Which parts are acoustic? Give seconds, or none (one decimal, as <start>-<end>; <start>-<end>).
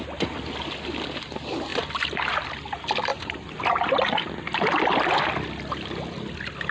0.0-6.7